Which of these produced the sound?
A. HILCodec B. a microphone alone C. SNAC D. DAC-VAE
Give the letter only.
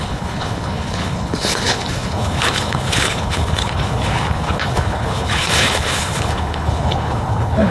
A